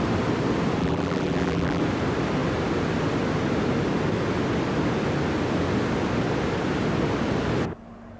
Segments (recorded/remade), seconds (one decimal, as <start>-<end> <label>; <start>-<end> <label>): 0.0-0.8 recorded; 0.8-1.8 remade; 1.8-8.2 recorded